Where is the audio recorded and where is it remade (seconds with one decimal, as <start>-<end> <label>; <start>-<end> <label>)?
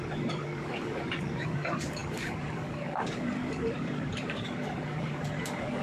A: 0.0-5.8 remade